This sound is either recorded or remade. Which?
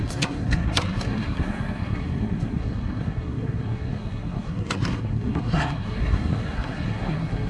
remade